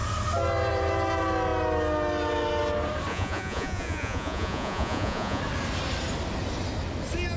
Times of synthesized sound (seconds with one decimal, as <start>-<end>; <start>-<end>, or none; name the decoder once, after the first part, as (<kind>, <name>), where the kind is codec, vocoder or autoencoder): 3.1-5.4 (vocoder, Vocos)